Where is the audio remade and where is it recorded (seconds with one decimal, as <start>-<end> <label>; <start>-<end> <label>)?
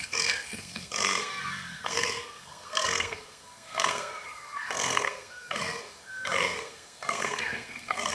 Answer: 0.0-8.1 remade